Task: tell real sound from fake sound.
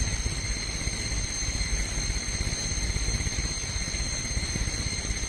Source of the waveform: real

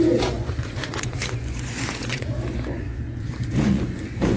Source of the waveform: fake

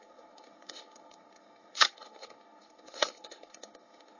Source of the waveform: fake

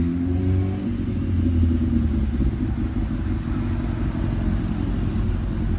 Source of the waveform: real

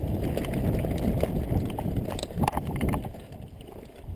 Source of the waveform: fake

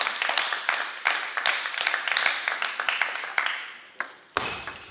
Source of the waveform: fake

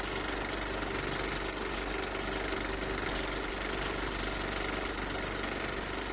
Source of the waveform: real